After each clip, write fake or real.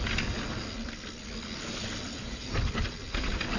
real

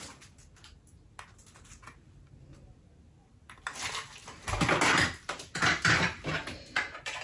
real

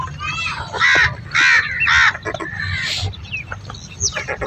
real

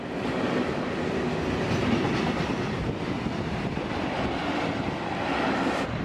real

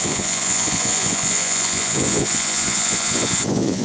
fake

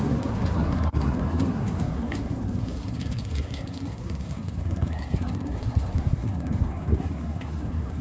fake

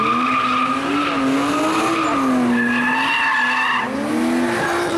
real